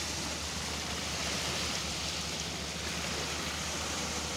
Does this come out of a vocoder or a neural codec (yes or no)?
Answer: no